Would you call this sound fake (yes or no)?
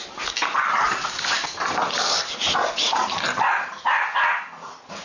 no